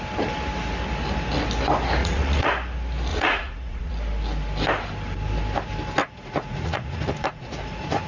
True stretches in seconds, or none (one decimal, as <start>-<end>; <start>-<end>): 0.0-2.0; 2.5-3.1; 3.9-6.0